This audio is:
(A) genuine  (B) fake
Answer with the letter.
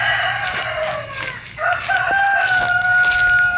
A